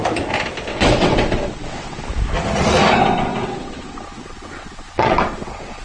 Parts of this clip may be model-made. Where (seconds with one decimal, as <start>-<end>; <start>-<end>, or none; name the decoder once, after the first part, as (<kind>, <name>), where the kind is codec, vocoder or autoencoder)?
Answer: 0.7-2.0 (vocoder, WaveNeXt); 3.0-5.8